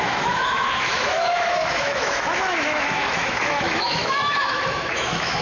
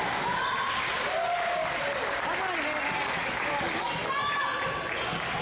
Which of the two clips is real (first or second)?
second